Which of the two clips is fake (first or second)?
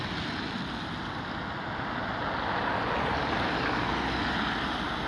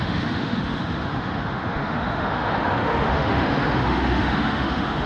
second